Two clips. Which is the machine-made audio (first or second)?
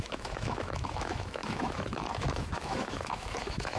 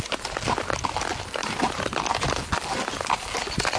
first